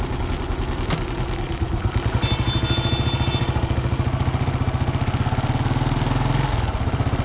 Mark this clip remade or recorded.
recorded